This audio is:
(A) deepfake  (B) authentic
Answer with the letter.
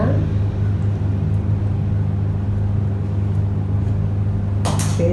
B